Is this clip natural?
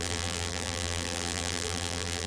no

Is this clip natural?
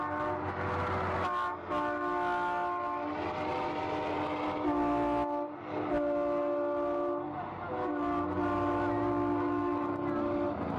yes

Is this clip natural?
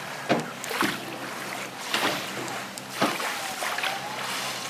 yes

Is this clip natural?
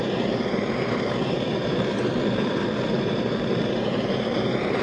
no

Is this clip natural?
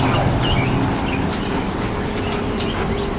yes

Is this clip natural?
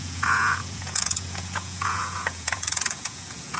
no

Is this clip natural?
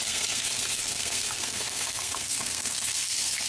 no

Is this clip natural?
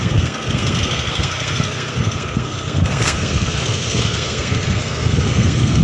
no